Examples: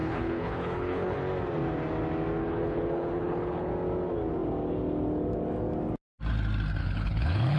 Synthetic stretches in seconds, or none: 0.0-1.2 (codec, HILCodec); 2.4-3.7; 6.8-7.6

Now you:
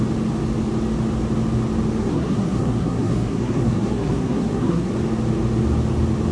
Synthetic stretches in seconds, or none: 2.0-4.9 (codec, SNAC)